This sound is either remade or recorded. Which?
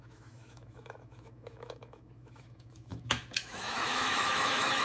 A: remade